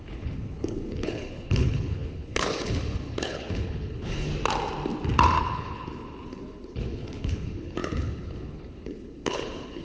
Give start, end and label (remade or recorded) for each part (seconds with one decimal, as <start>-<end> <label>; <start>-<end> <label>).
0.0-4.3 remade; 4.3-5.4 recorded; 5.4-9.8 remade